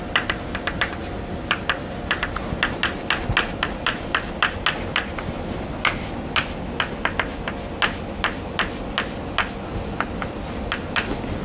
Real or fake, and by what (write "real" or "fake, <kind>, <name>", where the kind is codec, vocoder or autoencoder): real